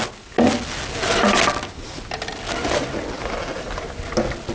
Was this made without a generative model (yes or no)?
yes